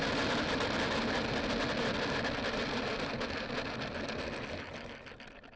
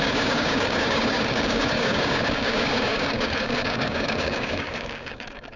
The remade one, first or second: second